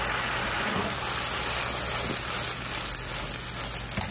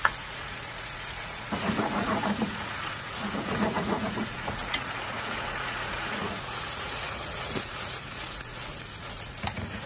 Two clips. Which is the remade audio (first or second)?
second